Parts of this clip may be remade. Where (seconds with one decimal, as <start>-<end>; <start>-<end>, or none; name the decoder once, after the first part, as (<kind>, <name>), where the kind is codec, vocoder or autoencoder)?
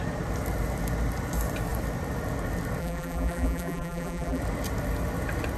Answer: 2.8-4.4 (vocoder, BigVGAN v2)